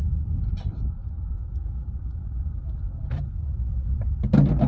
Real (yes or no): yes